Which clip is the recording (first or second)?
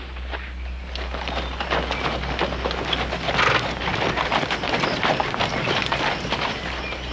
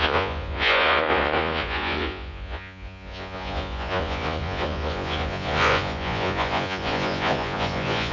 first